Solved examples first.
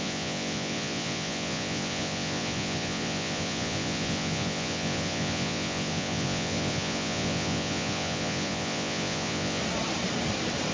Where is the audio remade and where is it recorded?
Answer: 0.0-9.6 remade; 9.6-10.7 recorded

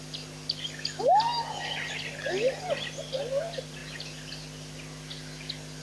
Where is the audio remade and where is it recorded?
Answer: 0.0-5.8 recorded

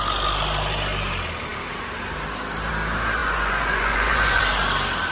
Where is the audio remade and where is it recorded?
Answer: 0.0-3.2 recorded; 3.2-4.4 remade; 4.4-5.1 recorded

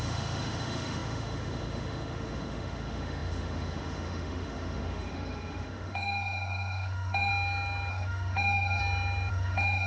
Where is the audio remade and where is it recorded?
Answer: 0.0-7.3 remade; 7.3-7.9 recorded; 7.9-8.8 remade; 8.8-9.3 recorded; 9.3-9.9 remade

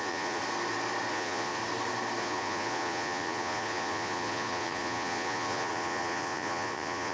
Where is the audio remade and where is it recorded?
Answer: 0.0-0.4 remade; 0.4-1.1 recorded; 1.1-1.6 remade; 1.6-2.2 recorded; 2.2-7.1 remade

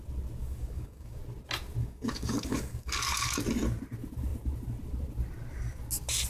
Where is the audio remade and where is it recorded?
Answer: 0.0-0.4 recorded; 0.4-1.2 remade; 1.2-1.8 recorded; 1.8-3.4 remade; 3.4-6.3 recorded

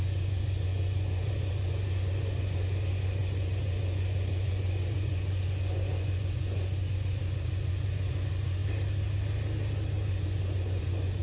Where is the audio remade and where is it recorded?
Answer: 0.0-8.6 remade; 8.6-10.1 recorded; 10.1-11.2 remade

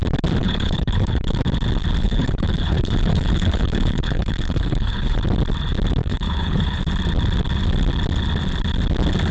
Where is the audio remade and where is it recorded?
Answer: 0.0-0.4 recorded; 0.4-1.4 remade; 1.4-2.0 recorded; 2.0-5.2 remade; 5.2-6.0 recorded; 6.0-6.8 remade; 6.8-9.3 recorded